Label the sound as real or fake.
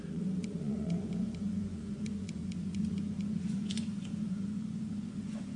fake